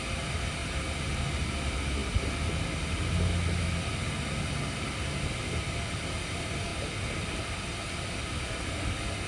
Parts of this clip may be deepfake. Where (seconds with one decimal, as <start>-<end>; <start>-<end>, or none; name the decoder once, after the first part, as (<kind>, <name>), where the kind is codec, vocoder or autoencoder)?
0.6-1.2 (vocoder, BigVGAN v2)